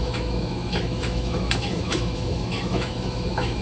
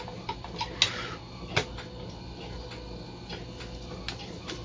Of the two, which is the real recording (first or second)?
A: second